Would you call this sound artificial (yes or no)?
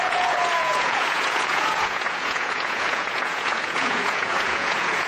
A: yes